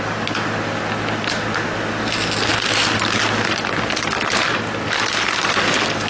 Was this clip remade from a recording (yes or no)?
no